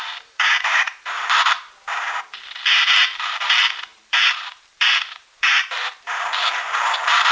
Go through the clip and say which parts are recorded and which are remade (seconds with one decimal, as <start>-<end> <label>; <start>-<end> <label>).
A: 0.0-7.3 remade